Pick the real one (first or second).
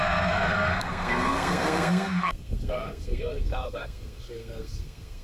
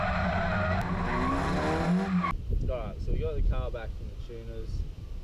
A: second